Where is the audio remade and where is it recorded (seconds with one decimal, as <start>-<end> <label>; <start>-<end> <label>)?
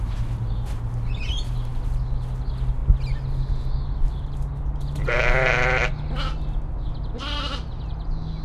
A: 0.0-8.4 recorded